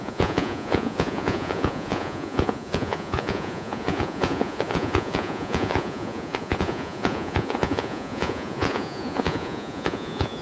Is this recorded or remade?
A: remade